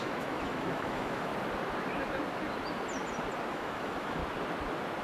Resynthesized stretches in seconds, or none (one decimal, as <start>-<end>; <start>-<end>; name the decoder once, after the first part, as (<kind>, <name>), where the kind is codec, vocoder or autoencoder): 0.0-1.3 (autoencoder, DAC-VAE); 3.5-4.2